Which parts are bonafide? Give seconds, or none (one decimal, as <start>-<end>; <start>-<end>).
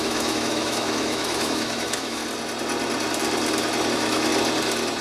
2.2-3.9; 4.3-5.0